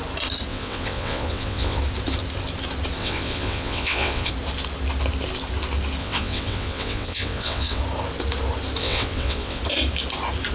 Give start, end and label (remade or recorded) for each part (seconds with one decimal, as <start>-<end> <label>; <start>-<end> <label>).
0.0-0.5 recorded; 0.5-1.8 remade; 1.8-3.0 recorded; 3.0-4.3 remade; 4.3-6.0 recorded; 6.0-7.8 remade; 7.8-8.8 recorded; 8.8-9.6 remade; 9.6-10.5 recorded